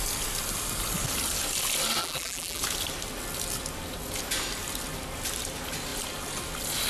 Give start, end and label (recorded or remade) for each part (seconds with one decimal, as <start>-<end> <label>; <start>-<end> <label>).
0.0-2.0 recorded; 2.0-2.6 remade; 2.6-6.9 recorded